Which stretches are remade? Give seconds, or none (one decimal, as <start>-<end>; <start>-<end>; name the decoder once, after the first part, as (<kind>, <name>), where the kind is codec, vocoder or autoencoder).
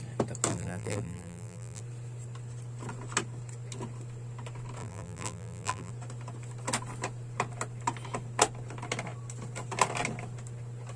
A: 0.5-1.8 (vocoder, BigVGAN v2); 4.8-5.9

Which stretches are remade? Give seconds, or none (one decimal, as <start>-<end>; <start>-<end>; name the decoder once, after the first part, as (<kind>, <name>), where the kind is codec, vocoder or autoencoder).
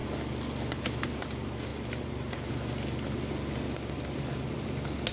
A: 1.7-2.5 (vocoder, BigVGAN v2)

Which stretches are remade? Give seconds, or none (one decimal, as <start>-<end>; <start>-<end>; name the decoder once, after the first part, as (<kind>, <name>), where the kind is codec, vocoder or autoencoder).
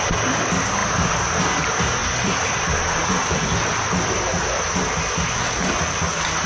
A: 2.0-4.1 (vocoder, BigVGAN v2)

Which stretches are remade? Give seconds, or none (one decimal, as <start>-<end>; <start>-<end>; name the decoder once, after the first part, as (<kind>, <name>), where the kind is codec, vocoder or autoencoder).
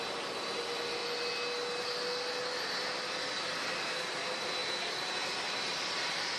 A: 4.6-5.7 (vocoder, BigVGAN v2)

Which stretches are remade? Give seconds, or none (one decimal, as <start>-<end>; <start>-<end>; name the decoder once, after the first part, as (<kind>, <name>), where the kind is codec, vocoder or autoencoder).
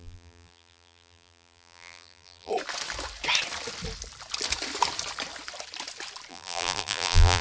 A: 0.0-2.5 (vocoder, BigVGAN v2); 6.3-7.4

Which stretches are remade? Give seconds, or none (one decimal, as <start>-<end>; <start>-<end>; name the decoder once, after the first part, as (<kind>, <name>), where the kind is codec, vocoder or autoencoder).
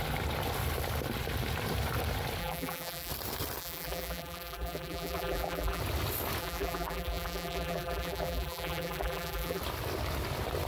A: 2.4-3.1 (vocoder, BigVGAN v2); 3.6-5.8; 6.4-9.6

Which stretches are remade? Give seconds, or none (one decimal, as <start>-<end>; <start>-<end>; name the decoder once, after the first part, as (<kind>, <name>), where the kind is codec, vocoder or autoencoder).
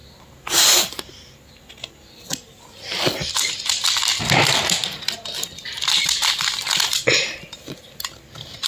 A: none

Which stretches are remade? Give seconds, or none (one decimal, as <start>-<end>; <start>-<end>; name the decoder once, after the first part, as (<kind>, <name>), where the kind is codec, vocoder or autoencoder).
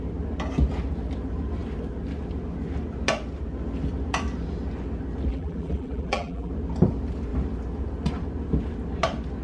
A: 5.3-6.5 (vocoder, BigVGAN v2)